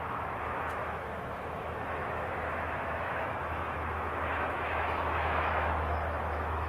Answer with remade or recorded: remade